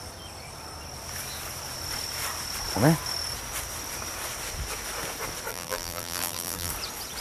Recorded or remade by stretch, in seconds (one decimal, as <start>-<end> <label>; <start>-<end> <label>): 0.0-5.5 recorded; 5.5-6.7 remade; 6.7-7.2 recorded

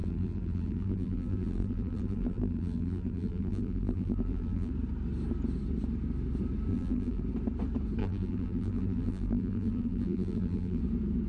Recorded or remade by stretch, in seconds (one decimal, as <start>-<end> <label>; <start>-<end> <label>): 0.0-4.7 remade; 4.7-6.7 recorded; 6.7-7.2 remade; 7.2-8.0 recorded; 8.0-10.8 remade; 10.8-11.3 recorded

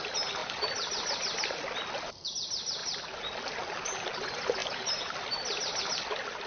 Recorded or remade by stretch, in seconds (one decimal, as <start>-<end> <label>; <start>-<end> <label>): 0.0-6.5 recorded

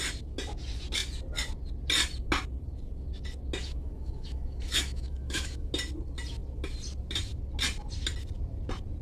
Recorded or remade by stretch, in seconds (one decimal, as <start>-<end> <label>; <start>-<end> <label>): 0.0-3.6 recorded; 3.6-5.7 remade; 5.7-9.0 recorded